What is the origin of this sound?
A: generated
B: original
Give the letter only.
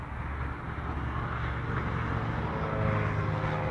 B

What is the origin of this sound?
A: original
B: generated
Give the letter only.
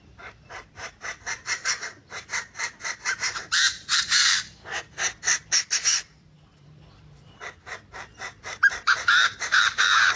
B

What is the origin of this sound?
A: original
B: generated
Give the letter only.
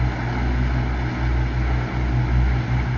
A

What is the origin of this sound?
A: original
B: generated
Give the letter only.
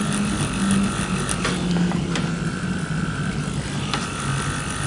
A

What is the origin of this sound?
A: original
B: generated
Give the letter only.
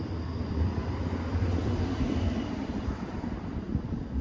B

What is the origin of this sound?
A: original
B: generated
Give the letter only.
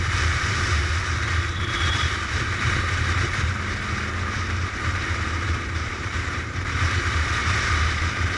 B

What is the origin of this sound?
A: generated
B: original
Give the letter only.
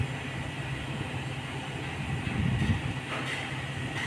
B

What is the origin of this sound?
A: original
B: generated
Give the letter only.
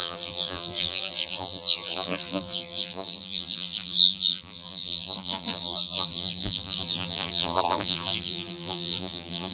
B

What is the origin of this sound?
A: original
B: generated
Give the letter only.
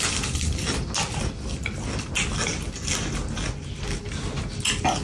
A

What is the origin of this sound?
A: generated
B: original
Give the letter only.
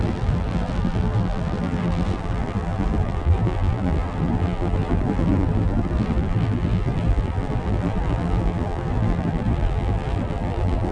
A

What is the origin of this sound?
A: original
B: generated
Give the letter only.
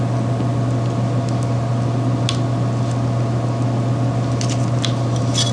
A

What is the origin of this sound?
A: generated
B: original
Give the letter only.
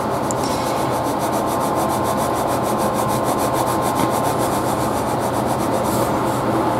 B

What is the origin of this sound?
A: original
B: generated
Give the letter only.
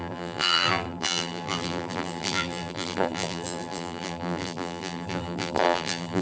B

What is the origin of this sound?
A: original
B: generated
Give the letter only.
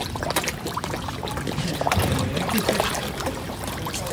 A